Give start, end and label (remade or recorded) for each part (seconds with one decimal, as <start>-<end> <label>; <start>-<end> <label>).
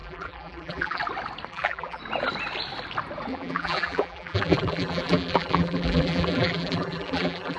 0.0-1.0 remade; 1.0-1.5 recorded; 1.5-2.0 remade; 2.0-3.3 recorded; 3.3-7.6 remade